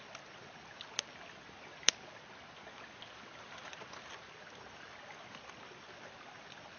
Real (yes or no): yes